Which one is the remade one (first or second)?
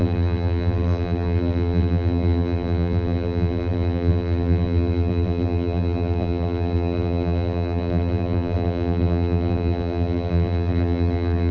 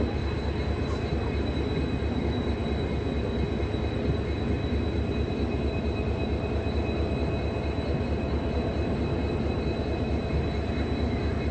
first